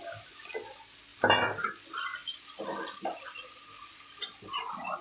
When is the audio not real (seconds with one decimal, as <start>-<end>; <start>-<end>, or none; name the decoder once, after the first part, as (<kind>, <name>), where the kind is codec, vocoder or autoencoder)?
none